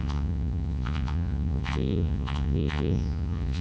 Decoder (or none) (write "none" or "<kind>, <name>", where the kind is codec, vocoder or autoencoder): vocoder, Vocos